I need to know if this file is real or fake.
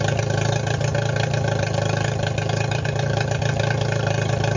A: real